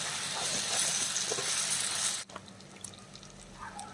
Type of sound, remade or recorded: recorded